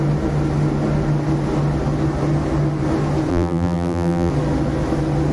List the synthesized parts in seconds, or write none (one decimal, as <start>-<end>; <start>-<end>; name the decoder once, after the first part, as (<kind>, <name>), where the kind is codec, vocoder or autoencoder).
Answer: 3.3-4.3 (vocoder, BigVGAN v2)